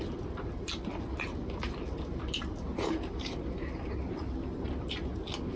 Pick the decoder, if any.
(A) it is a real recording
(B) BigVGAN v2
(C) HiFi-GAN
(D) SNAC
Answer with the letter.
A